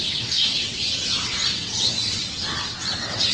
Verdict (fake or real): fake